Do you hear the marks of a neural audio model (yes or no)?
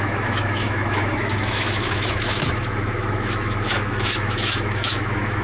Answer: yes